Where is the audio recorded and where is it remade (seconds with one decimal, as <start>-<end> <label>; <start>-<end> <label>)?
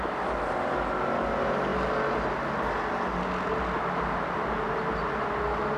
0.0-5.8 recorded